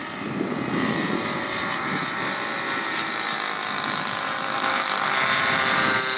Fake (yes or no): yes